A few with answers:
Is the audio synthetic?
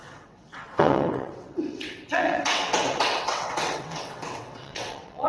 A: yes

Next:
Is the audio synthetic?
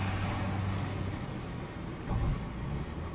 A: no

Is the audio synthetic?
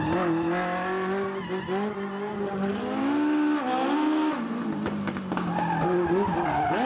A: no